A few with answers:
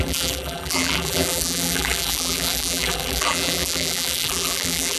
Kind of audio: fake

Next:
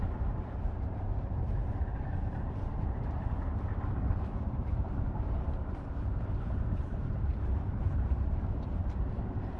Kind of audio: fake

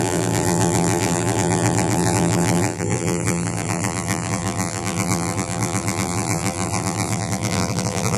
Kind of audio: fake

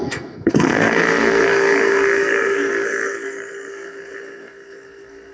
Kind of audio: fake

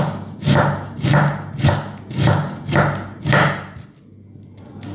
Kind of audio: real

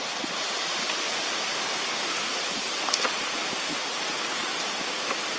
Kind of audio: real